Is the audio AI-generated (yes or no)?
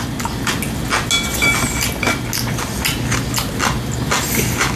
no